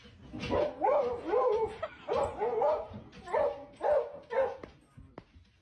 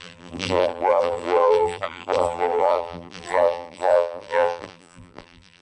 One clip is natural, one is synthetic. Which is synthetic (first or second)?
second